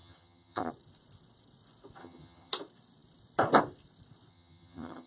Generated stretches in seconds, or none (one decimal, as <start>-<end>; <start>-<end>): 0.0-0.7; 2.0-2.5; 4.3-5.1